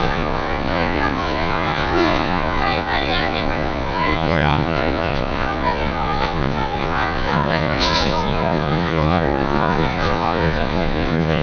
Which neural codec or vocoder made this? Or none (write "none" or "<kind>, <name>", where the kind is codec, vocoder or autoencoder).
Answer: vocoder, Vocos